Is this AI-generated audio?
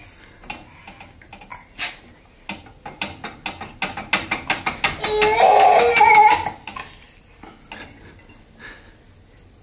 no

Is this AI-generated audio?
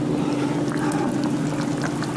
no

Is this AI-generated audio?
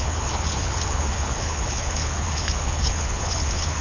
yes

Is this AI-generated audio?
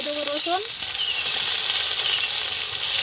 no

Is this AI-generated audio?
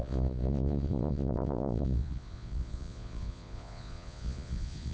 yes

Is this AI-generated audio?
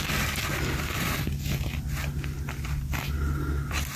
no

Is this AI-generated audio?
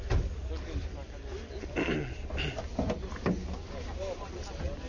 no